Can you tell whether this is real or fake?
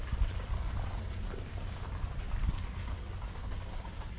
real